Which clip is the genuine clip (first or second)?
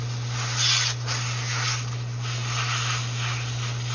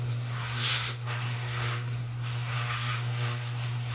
first